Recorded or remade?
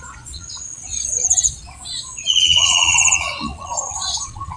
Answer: remade